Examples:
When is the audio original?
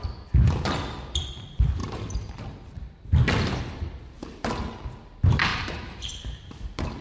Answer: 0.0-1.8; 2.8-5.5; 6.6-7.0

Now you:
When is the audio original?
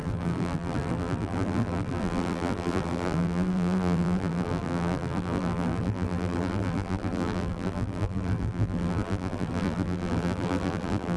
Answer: none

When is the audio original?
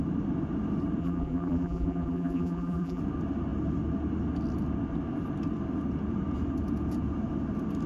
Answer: 0.0-1.0; 3.0-7.9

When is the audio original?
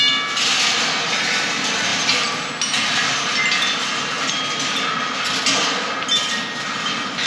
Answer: 0.0-7.3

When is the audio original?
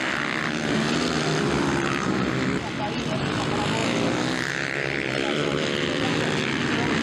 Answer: 0.0-7.0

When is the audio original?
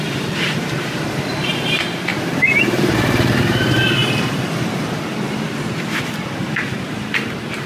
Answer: 2.1-2.6; 4.0-6.3